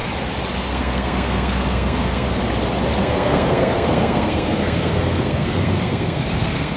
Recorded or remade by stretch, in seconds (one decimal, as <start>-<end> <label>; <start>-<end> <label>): 0.0-0.6 recorded; 0.6-2.4 remade; 2.4-3.0 recorded; 3.0-6.8 remade